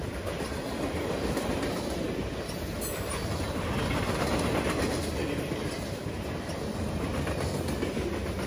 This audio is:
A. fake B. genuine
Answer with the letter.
B